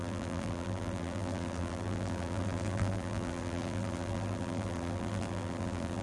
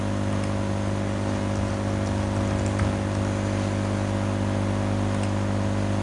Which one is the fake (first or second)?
first